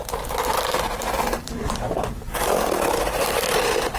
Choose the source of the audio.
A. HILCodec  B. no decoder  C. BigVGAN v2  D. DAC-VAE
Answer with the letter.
C